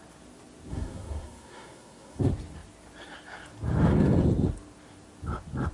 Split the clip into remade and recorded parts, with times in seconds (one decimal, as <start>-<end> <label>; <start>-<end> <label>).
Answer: 0.0-0.7 recorded; 0.7-2.2 remade; 2.2-5.7 recorded